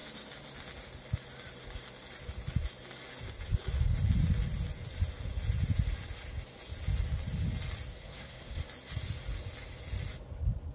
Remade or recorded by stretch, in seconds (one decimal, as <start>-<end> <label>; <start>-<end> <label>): 0.0-8.0 recorded; 8.0-8.6 remade; 8.6-10.7 recorded